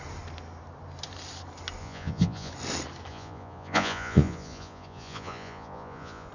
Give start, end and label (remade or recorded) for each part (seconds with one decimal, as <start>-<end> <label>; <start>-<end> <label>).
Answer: 0.0-1.8 recorded; 1.8-2.5 remade; 2.5-3.1 recorded; 3.1-6.3 remade